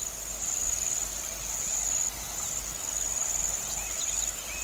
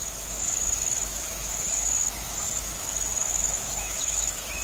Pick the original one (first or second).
first